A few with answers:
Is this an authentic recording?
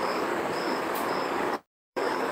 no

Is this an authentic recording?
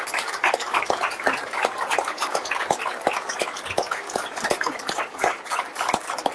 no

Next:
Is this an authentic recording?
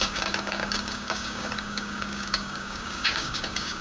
no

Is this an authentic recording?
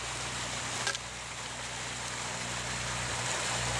yes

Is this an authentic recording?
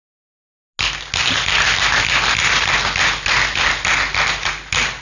yes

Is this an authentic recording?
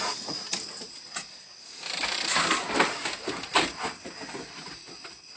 yes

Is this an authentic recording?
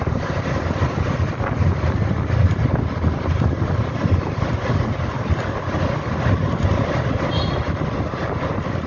yes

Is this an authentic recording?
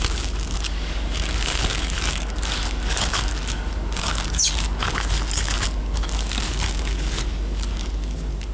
no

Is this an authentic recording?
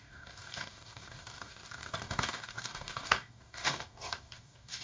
no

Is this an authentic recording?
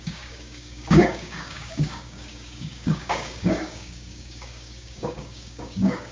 no